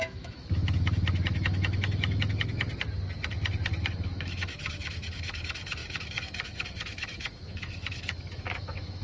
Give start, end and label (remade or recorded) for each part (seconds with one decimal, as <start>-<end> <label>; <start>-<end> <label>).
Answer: 0.0-2.7 remade; 2.7-3.8 recorded; 3.8-9.0 remade